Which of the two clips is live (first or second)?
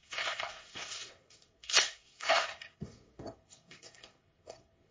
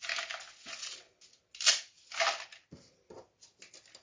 second